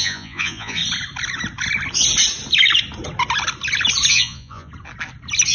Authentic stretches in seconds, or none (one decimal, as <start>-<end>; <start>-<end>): 0.8-4.1; 4.7-5.5